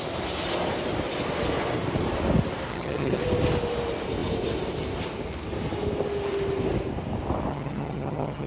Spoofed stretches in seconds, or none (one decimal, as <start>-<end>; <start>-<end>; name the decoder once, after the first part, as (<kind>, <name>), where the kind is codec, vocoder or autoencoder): 2.7-3.2 (vocoder, HiFi-GAN); 7.5-8.5